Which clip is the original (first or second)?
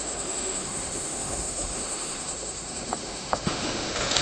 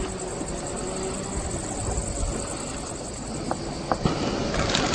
second